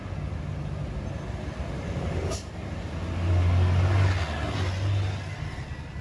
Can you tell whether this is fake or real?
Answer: real